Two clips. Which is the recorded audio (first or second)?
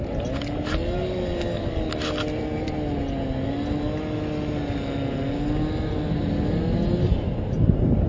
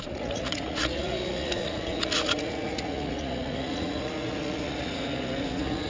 first